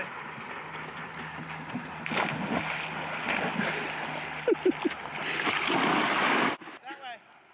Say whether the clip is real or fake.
real